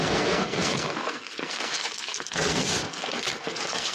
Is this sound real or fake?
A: fake